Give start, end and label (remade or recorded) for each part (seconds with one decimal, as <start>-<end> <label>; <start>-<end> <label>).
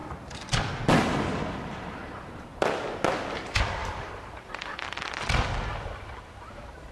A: 0.0-3.8 recorded; 3.8-6.1 remade; 6.1-6.9 recorded